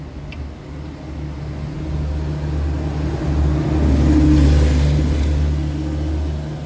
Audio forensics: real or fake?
real